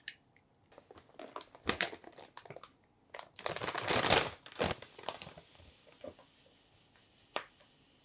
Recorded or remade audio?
recorded